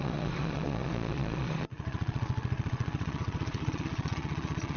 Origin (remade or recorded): remade